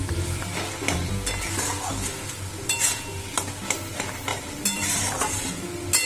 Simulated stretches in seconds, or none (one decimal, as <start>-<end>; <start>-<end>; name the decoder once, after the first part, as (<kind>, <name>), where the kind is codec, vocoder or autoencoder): 4.3-5.6 (vocoder, BigVGAN v2)